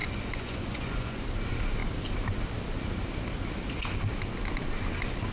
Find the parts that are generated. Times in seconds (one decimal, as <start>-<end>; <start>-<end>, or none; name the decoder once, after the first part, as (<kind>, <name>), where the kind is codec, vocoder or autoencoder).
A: 0.0-1.2 (vocoder, Vocos)